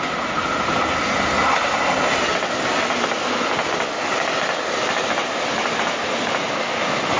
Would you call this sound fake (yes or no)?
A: no